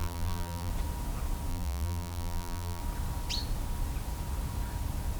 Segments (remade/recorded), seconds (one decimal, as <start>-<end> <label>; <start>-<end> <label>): 0.0-0.7 remade; 0.7-1.5 recorded; 1.5-2.8 remade; 2.8-5.2 recorded